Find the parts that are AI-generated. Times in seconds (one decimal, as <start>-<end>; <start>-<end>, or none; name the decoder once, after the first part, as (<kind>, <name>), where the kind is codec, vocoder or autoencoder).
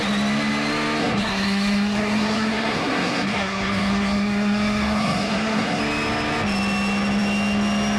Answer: 1.0-5.8 (codec, SNAC)